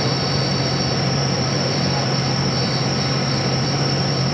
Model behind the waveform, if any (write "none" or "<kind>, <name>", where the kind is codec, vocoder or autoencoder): vocoder, BigVGAN v2